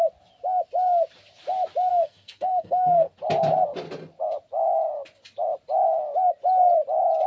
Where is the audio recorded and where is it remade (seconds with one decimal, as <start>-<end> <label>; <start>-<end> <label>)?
0.0-1.9 recorded; 1.9-3.1 remade; 3.1-7.3 recorded